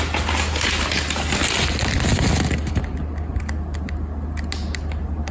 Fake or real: real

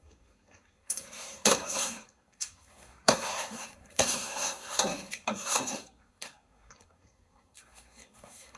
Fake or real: fake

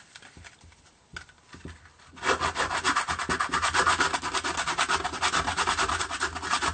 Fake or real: real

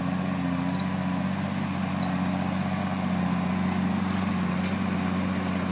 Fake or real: real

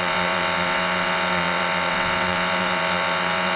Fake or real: fake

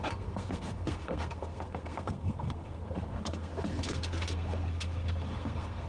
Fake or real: fake